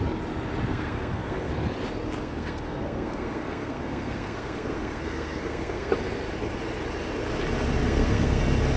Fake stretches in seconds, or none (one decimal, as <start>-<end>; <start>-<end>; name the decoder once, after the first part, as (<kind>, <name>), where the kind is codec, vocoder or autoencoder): 0.7-1.5 (codec, SNAC); 2.2-5.9; 7.8-8.4